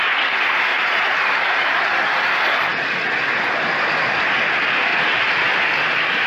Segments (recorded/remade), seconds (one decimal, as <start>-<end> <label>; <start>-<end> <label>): 0.0-0.7 recorded; 0.7-1.8 remade; 1.8-4.9 recorded; 4.9-5.6 remade; 5.6-6.3 recorded